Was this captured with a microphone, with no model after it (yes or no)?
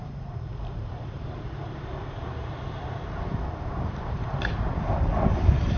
no